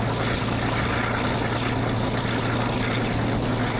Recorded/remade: recorded